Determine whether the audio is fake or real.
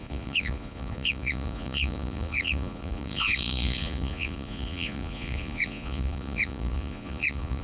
fake